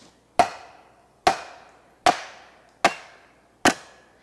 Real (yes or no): yes